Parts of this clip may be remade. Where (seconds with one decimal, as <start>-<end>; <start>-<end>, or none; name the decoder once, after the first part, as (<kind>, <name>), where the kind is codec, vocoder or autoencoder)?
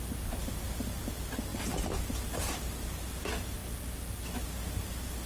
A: none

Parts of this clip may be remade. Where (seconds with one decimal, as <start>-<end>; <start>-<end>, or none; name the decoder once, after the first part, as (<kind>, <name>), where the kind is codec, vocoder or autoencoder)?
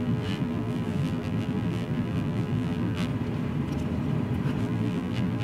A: 0.0-3.1 (vocoder, BigVGAN v2); 4.6-5.4